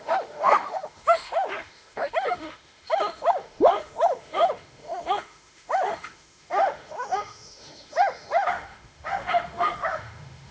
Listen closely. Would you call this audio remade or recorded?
remade